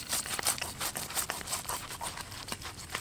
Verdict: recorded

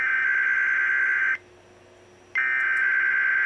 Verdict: recorded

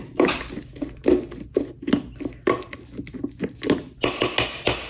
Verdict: recorded